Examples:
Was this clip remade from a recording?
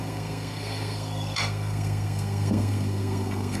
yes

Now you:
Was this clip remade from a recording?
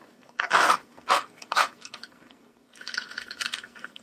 yes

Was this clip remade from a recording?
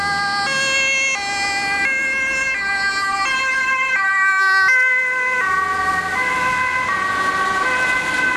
no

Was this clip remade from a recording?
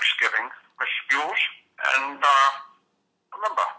no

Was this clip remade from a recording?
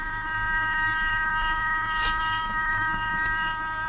no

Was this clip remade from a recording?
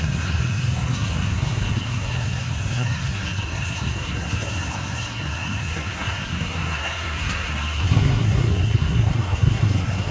yes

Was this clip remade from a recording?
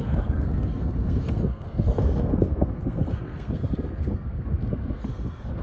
yes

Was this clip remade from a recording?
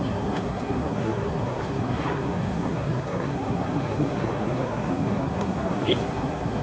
yes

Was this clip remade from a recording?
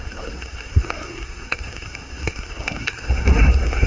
yes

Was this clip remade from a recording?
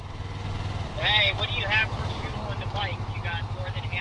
no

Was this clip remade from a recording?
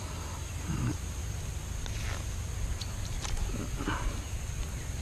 no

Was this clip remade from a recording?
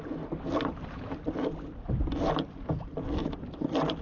no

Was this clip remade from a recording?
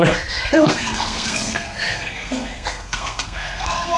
yes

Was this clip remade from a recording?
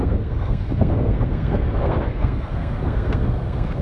yes